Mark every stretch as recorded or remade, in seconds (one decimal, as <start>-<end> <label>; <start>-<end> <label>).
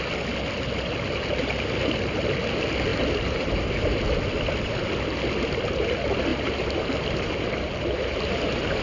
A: 0.0-2.9 recorded; 2.9-4.0 remade; 4.0-6.3 recorded; 6.3-8.4 remade; 8.4-8.8 recorded